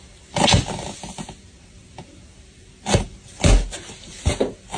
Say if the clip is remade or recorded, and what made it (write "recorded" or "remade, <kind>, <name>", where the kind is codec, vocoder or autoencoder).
recorded